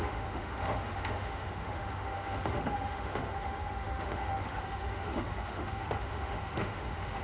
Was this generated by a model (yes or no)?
yes